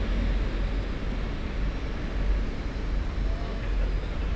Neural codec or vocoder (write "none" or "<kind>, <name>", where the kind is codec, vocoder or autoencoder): none